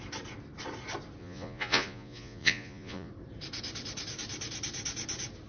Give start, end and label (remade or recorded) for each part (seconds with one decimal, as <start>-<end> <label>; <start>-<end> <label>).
0.0-1.2 recorded; 1.2-3.1 remade; 3.1-5.5 recorded